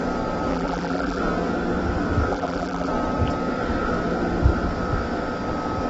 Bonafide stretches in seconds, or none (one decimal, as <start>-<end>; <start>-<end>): 0.0-0.5; 1.2-2.3; 2.9-5.9